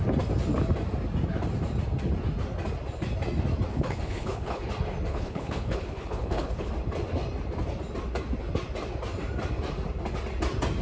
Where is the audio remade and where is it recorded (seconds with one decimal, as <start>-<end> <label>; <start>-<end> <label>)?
0.0-3.7 recorded; 3.7-4.6 remade; 4.6-5.1 recorded; 5.1-6.7 remade; 6.7-10.8 recorded

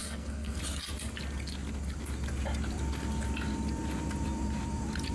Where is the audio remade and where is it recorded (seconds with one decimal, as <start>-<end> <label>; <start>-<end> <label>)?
0.0-0.6 remade; 0.6-5.1 recorded

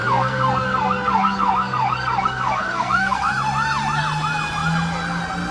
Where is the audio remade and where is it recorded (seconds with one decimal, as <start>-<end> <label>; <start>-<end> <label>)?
0.0-3.3 remade; 3.3-5.5 recorded

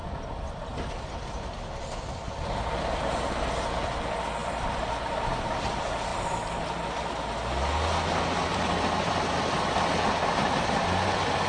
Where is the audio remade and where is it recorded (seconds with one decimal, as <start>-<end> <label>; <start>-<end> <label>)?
0.0-4.4 recorded; 4.4-5.2 remade; 5.2-6.1 recorded; 6.1-7.1 remade; 7.1-8.5 recorded; 8.5-9.1 remade; 9.1-11.5 recorded

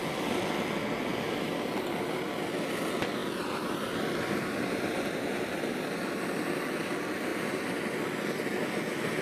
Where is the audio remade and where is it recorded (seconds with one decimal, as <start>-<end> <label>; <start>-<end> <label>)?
0.0-1.1 recorded; 1.1-1.8 remade; 1.8-3.2 recorded; 3.2-6.1 remade; 6.1-7.3 recorded; 7.3-9.2 remade